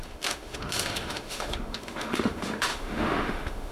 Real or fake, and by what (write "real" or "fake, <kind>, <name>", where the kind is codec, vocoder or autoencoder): fake, autoencoder, DAC-VAE